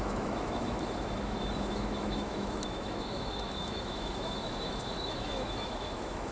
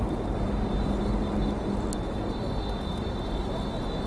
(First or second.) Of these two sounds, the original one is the second